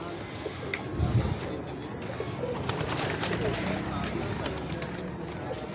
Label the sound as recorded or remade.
recorded